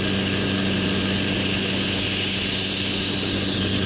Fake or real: real